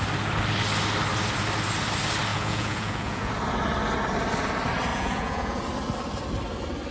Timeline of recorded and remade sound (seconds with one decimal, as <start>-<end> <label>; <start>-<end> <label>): 0.0-2.3 recorded; 2.3-3.3 remade; 3.3-4.9 recorded; 4.9-5.6 remade; 5.6-6.9 recorded